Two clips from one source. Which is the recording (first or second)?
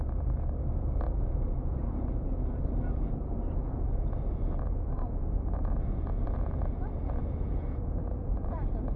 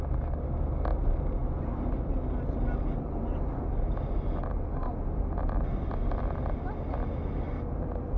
second